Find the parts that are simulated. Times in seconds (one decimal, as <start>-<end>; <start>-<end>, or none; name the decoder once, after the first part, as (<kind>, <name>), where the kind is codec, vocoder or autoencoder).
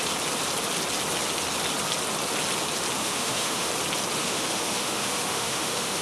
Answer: 3.0-3.7 (autoencoder, DAC-VAE); 4.2-6.0